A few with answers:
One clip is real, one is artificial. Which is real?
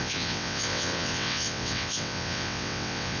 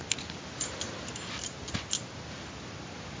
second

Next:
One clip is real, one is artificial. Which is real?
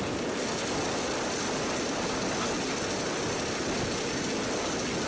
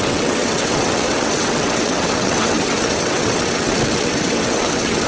first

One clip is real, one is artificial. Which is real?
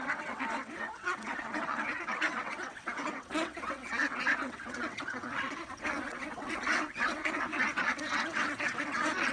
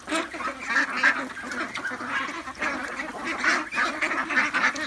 second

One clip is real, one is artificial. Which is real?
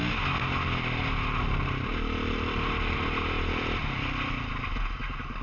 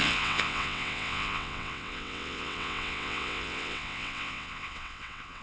first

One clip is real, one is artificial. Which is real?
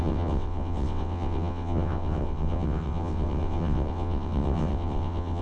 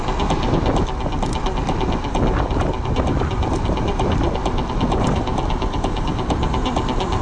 second